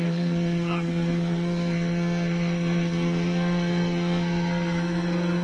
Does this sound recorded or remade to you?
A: remade